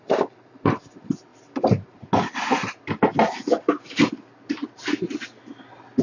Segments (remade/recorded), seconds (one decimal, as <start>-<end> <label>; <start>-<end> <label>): 0.0-6.0 recorded